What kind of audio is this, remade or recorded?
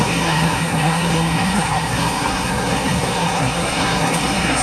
remade